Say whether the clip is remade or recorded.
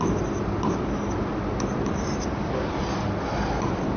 recorded